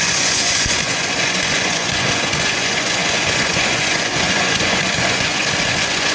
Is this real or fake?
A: fake